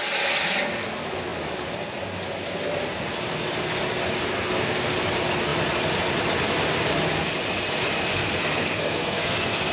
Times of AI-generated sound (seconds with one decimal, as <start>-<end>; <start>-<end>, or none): 4.3-4.9; 8.1-9.7